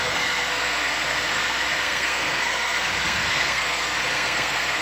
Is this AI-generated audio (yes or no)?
yes